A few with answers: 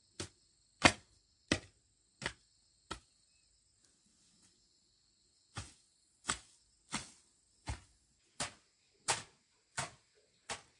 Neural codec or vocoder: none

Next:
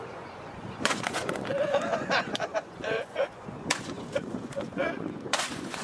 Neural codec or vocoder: vocoder, Vocos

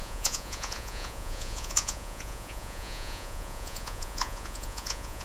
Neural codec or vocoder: vocoder, Vocos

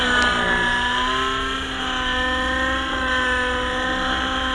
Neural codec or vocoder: none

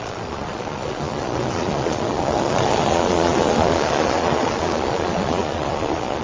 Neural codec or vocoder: vocoder, Vocos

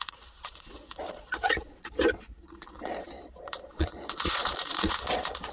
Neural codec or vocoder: vocoder, Vocos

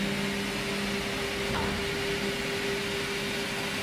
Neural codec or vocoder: none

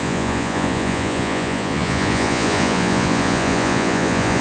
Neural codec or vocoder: vocoder, Vocos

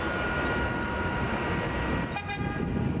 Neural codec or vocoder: none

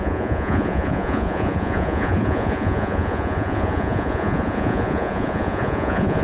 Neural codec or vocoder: vocoder, Vocos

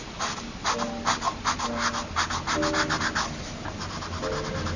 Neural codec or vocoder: none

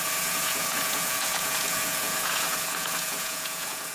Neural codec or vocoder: vocoder, Vocos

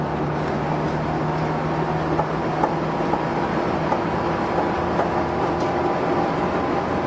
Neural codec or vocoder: none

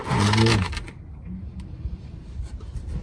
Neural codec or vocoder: none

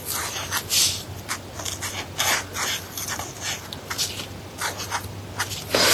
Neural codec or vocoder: none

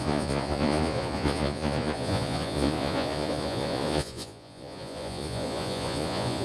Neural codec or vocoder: vocoder, Vocos